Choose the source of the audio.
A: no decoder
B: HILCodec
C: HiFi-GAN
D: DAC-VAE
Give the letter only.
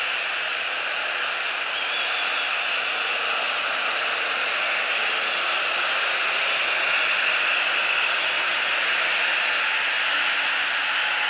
A